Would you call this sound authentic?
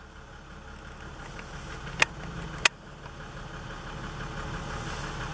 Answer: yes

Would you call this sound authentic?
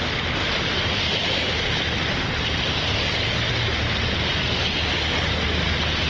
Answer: yes